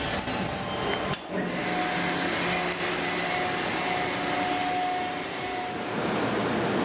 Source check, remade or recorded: recorded